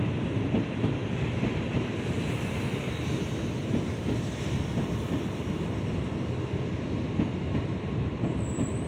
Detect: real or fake fake